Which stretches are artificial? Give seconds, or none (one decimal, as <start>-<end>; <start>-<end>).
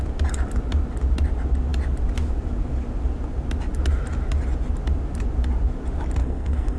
6.2-6.8